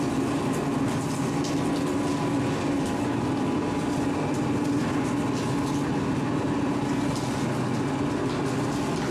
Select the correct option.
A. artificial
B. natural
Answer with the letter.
B